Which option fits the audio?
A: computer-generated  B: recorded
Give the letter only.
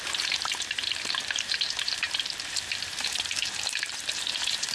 A